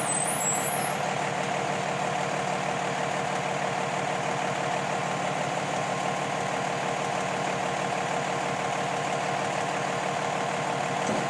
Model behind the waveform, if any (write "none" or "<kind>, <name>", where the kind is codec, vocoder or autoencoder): none